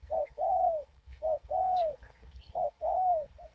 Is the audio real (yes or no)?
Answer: no